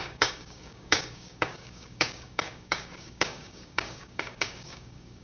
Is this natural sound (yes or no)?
no